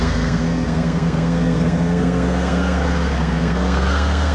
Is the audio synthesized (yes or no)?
yes